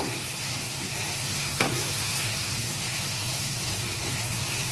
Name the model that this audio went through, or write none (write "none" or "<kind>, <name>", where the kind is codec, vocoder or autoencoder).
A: codec, SNAC